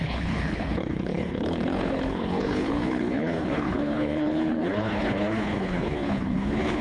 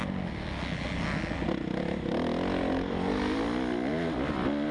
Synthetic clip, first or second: first